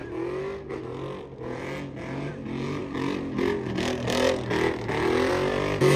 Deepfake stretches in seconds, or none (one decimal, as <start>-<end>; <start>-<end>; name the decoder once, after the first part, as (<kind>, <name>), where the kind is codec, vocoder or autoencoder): none